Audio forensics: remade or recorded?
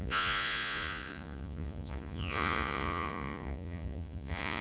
remade